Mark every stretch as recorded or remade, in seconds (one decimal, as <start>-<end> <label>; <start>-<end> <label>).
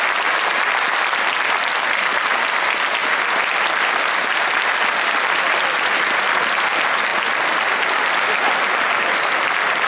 0.0-9.9 recorded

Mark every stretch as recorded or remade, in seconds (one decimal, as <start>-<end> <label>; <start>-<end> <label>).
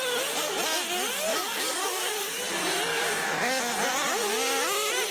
0.0-1.3 recorded; 1.3-2.4 remade; 2.4-2.9 recorded; 2.9-3.6 remade; 3.6-5.1 recorded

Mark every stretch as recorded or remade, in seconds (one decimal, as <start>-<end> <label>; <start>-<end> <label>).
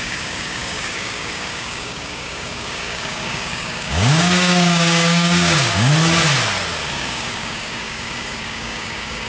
0.0-5.9 remade; 5.9-6.9 recorded; 6.9-9.3 remade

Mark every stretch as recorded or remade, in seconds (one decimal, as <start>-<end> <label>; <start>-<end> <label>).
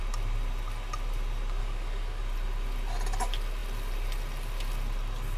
0.0-1.6 recorded; 1.6-2.2 remade; 2.2-5.4 recorded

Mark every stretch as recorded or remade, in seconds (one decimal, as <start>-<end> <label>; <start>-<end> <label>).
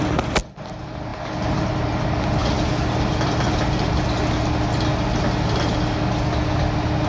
0.0-7.1 recorded